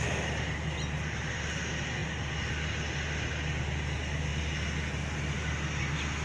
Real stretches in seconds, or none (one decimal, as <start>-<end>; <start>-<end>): 0.0-6.2